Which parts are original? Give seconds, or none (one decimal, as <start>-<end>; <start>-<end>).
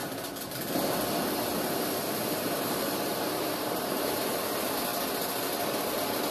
0.0-1.5; 4.4-6.3